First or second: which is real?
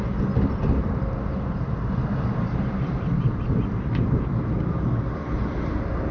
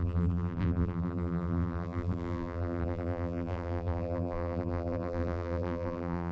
first